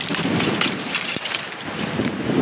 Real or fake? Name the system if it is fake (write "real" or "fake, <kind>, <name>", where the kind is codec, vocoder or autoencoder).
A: real